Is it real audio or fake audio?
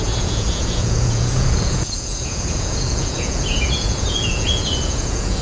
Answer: fake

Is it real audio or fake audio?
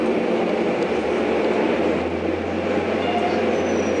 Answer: real